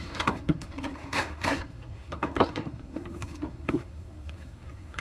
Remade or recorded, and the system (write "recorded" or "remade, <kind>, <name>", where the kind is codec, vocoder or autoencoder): remade, codec, SNAC